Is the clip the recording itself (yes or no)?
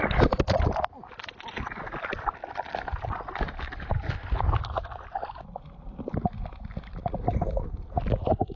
yes